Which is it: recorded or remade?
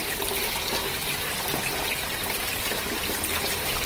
remade